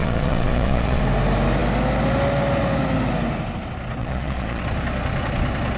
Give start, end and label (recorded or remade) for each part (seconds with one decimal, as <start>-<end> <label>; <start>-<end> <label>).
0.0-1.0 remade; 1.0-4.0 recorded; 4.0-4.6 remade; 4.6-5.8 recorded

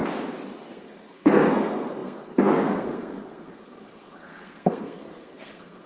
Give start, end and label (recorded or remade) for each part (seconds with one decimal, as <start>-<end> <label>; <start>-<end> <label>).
0.0-0.7 recorded; 0.7-5.9 remade

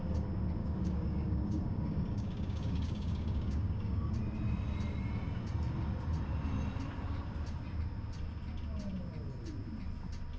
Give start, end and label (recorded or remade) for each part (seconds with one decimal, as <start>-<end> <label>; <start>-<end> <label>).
0.0-0.6 recorded; 0.6-4.1 remade; 4.1-10.4 recorded